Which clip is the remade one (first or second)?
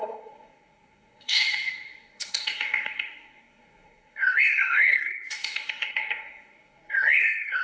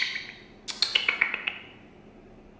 first